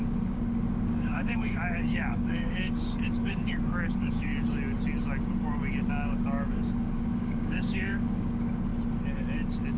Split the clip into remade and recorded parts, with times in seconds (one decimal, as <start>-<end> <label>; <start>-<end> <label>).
0.0-4.3 remade; 4.3-5.9 recorded; 5.9-8.7 remade; 8.7-9.8 recorded